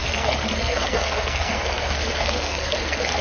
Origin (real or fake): fake